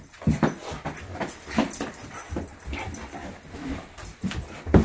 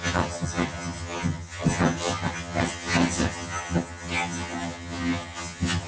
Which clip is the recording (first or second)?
first